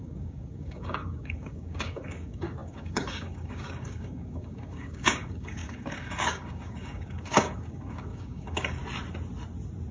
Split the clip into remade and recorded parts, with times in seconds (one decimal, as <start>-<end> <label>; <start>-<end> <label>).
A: 0.0-8.8 remade; 8.8-9.9 recorded

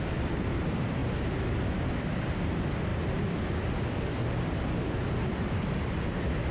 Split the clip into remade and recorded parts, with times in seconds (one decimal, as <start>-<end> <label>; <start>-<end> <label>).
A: 0.0-1.0 remade; 1.0-1.7 recorded; 1.7-4.2 remade; 4.2-4.8 recorded; 4.8-6.5 remade

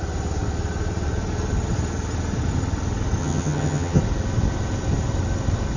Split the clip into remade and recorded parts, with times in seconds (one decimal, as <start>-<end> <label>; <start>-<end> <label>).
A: 0.0-3.2 recorded; 3.2-4.0 remade; 4.0-5.8 recorded

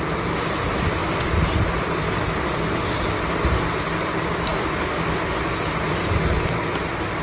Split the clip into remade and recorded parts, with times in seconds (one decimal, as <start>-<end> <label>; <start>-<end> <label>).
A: 0.0-1.0 recorded; 1.0-2.6 remade; 2.6-7.2 recorded

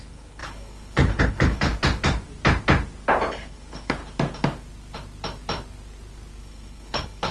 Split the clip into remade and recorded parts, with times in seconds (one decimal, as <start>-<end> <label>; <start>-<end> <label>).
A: 0.0-1.7 remade; 1.7-3.3 recorded; 3.3-4.0 remade; 4.0-6.4 recorded; 6.4-7.3 remade

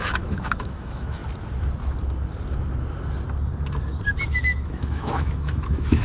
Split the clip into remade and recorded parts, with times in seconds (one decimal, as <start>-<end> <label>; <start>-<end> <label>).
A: 0.0-1.2 remade; 1.2-4.2 recorded; 4.2-6.0 remade

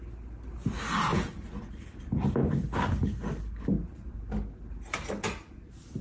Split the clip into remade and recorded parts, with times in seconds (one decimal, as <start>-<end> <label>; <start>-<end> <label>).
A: 0.0-6.0 recorded

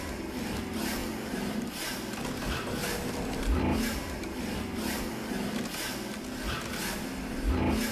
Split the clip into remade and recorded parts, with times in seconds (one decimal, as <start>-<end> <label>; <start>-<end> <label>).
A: 0.0-1.0 recorded; 1.0-5.1 remade; 5.1-7.9 recorded